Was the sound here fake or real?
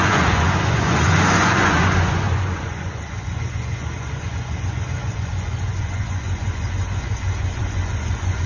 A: fake